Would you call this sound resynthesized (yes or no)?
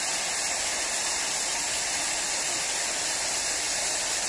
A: no